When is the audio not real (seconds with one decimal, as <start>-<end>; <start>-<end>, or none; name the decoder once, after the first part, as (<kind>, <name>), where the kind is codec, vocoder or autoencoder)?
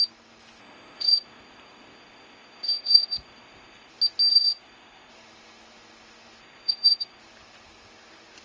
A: 0.6-3.9 (codec, ZipCodec); 4.3-5.1; 6.4-7.2